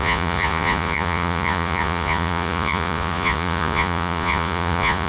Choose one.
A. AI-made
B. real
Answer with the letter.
A